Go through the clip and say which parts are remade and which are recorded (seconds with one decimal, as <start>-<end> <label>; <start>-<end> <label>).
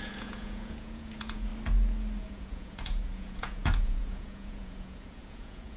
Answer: 0.0-1.5 remade; 1.5-2.2 recorded; 2.2-5.8 remade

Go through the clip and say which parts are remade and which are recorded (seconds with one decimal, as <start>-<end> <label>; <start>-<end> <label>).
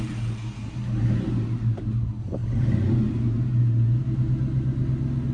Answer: 0.0-5.3 recorded